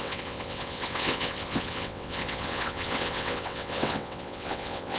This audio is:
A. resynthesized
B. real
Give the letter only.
A